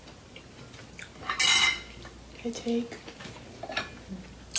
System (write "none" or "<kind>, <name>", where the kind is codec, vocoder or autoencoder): none